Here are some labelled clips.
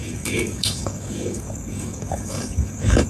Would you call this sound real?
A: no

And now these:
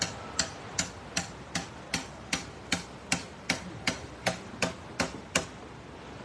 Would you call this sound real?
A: yes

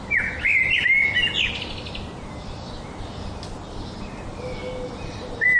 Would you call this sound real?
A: yes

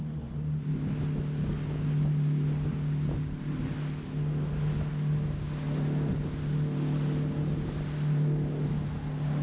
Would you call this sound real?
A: yes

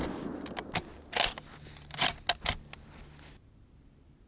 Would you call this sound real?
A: yes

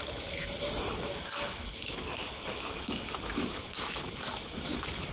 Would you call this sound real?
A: no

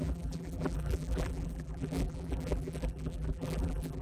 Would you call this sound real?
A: no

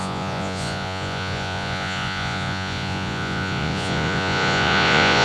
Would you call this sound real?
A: no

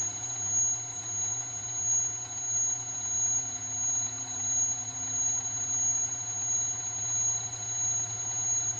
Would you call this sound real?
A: yes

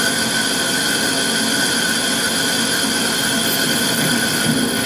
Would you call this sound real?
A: yes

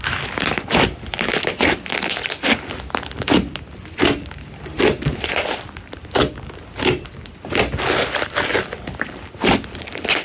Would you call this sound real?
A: yes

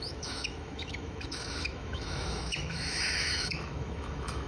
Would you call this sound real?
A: no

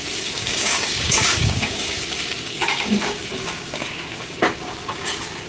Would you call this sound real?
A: no